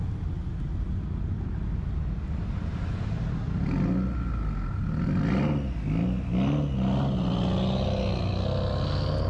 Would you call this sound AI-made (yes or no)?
no